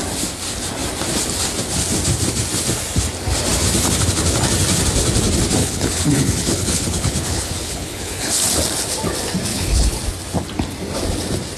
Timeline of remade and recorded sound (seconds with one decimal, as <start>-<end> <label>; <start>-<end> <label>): 0.0-5.6 recorded; 5.6-8.3 remade; 8.3-9.5 recorded; 9.5-10.0 remade; 10.0-11.6 recorded